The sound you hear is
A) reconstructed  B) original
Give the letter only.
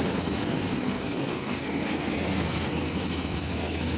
A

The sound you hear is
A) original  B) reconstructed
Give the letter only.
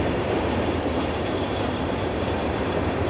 B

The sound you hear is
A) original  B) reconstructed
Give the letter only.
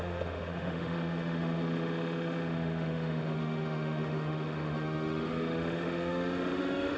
B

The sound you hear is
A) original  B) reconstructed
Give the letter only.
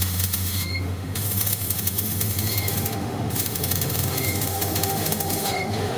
B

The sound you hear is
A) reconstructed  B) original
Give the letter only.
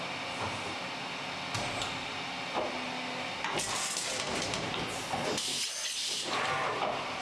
B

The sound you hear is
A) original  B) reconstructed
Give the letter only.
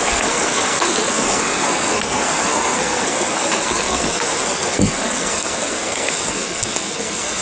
B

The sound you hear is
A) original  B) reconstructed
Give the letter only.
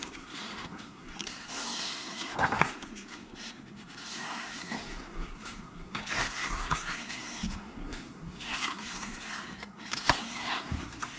B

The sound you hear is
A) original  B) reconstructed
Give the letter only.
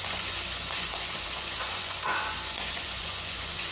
B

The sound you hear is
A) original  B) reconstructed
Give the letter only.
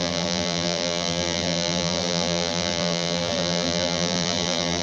B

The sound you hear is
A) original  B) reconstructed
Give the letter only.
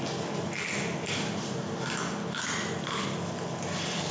A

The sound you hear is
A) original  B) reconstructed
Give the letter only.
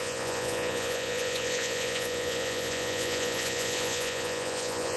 B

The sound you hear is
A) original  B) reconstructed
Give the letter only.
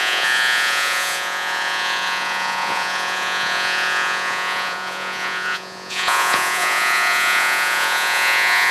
B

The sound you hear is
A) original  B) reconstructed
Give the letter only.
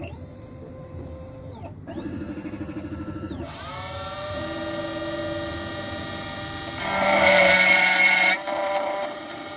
B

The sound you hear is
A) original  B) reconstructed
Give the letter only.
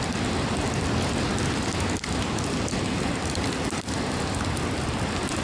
A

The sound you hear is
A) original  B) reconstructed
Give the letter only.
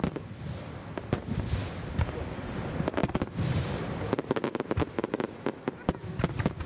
A